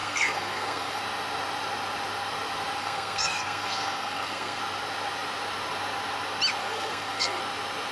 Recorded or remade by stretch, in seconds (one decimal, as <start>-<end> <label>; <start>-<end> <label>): 0.0-1.0 remade; 1.0-2.8 recorded; 2.8-4.6 remade; 4.6-6.6 recorded; 6.6-7.4 remade; 7.4-7.9 recorded